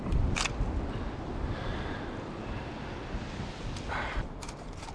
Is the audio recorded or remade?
recorded